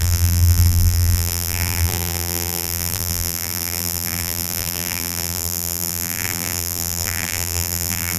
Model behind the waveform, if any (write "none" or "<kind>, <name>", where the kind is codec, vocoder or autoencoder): vocoder, BigVGAN v2